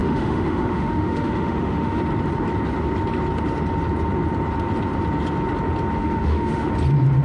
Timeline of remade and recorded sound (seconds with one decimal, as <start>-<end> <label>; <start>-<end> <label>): 0.0-2.0 remade; 2.0-6.0 recorded; 6.0-6.7 remade; 6.7-7.2 recorded